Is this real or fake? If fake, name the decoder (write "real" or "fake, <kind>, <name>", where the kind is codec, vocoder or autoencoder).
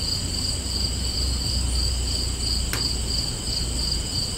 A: real